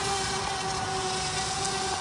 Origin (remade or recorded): recorded